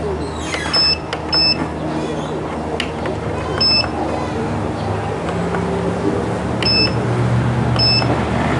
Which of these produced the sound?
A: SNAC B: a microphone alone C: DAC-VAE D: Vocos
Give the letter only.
B